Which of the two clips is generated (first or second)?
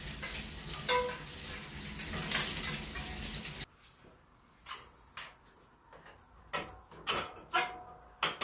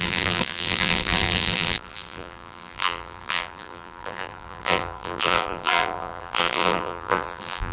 second